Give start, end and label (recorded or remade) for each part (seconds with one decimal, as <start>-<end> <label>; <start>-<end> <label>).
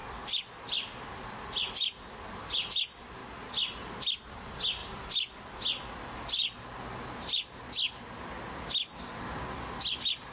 0.0-3.2 remade; 3.2-3.9 recorded; 3.9-4.8 remade; 4.8-9.5 recorded; 9.5-10.3 remade